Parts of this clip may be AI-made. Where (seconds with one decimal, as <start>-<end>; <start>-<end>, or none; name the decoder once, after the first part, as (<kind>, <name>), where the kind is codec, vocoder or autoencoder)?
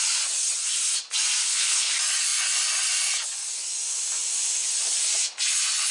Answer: 1.4-1.9 (codec, HILCodec)